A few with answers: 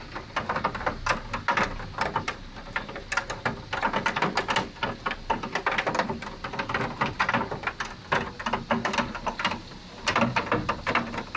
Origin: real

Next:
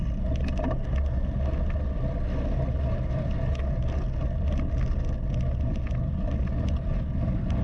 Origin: real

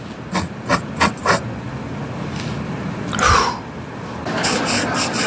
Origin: real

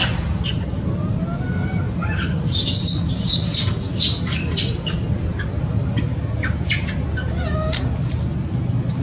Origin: real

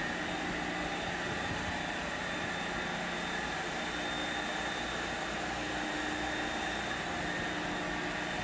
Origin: real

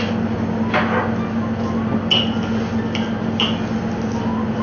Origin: real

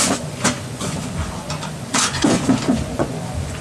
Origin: fake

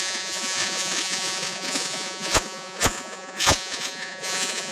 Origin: fake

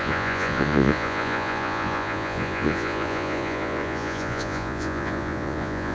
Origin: fake